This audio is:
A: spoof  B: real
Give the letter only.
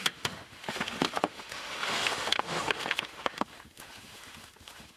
A